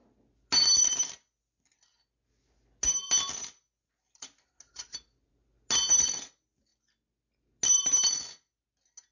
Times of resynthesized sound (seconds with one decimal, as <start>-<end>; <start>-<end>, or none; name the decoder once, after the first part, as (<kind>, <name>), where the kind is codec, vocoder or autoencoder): none